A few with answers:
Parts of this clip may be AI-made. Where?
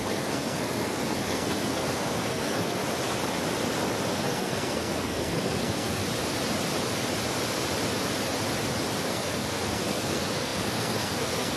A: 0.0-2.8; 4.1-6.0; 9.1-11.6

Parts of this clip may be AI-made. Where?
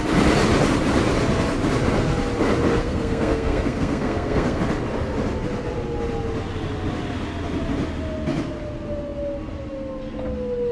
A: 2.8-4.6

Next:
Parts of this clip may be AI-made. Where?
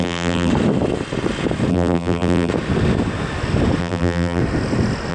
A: 0.0-0.5; 1.7-2.5; 3.8-4.4